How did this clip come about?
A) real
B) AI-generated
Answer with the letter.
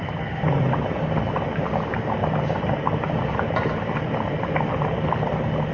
A